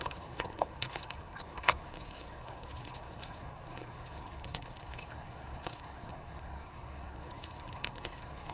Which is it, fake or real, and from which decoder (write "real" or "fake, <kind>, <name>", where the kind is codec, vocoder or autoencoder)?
fake, codec, SNAC